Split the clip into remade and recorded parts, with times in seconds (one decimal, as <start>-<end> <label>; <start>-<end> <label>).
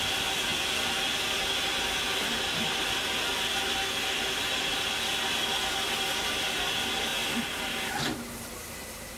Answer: 0.0-9.2 recorded